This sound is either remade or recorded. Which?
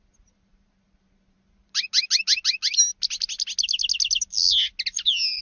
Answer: recorded